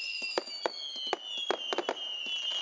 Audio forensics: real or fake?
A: real